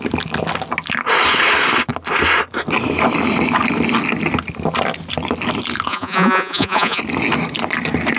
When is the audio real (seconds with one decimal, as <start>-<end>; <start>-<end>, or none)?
0.0-5.9; 7.0-8.2

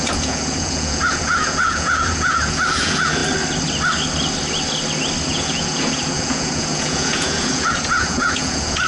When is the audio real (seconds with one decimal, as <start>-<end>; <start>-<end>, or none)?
3.2-5.3

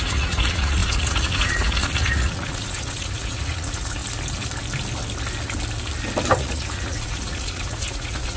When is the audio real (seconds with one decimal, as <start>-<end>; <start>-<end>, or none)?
4.0-6.4

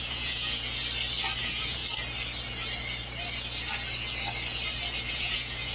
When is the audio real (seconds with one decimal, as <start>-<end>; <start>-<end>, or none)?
0.8-1.4; 1.8-5.1